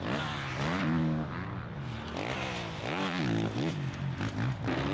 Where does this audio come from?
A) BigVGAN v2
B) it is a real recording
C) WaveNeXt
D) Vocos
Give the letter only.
B